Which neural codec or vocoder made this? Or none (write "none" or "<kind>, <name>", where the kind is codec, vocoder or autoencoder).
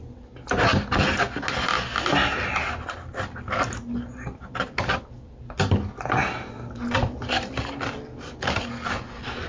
none